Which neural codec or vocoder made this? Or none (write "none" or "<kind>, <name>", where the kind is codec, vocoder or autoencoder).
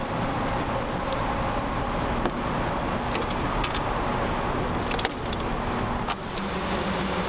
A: none